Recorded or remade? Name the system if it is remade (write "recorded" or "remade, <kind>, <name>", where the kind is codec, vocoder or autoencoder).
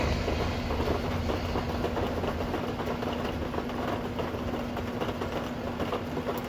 recorded